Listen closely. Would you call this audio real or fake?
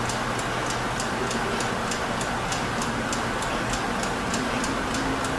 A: real